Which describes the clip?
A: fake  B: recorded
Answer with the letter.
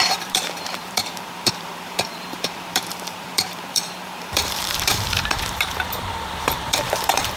A